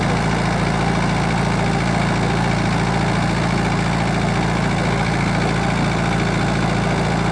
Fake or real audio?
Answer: real